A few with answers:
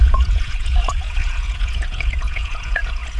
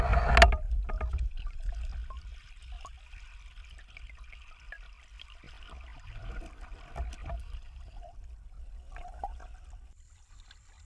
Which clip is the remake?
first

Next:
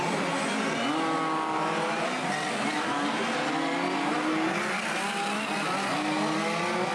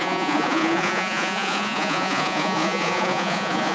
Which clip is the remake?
second